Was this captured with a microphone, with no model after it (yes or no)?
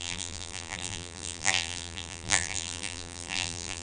no